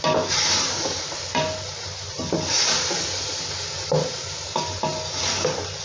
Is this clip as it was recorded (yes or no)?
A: yes